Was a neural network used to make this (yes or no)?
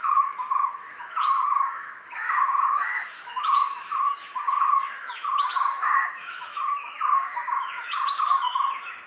yes